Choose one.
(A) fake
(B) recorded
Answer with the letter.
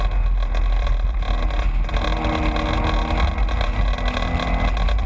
B